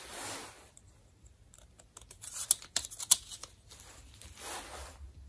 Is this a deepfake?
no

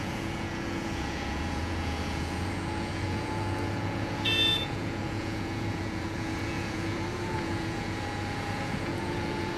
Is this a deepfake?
yes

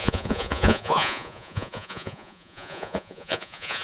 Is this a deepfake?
yes